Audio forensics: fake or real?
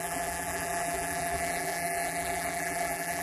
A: fake